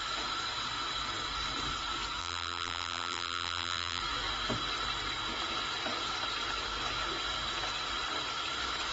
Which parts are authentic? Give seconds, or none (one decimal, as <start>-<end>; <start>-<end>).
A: 0.0-2.2; 4.0-8.9